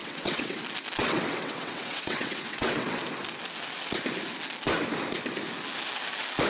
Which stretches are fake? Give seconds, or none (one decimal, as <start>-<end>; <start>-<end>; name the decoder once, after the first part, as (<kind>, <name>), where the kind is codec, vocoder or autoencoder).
0.0-0.6 (vocoder, WaveNeXt); 1.0-3.0